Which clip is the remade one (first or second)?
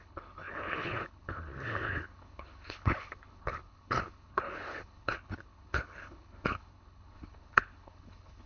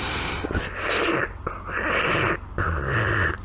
first